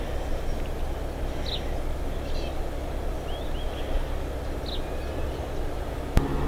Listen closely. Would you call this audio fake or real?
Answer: real